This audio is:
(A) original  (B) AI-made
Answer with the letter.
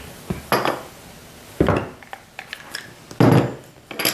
A